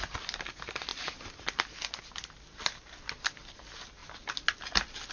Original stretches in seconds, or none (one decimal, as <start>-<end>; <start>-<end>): 0.0-5.1